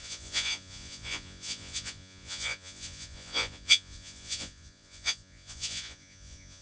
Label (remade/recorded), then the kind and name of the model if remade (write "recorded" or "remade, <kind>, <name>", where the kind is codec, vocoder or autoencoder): remade, vocoder, Vocos